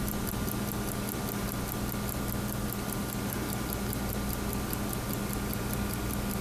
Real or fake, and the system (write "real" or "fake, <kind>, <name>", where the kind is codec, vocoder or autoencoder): real